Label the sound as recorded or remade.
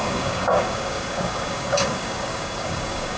remade